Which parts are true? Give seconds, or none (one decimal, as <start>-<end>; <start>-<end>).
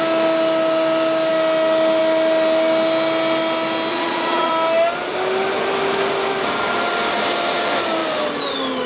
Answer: 0.0-3.9; 4.5-8.9